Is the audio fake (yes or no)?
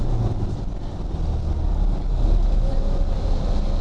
no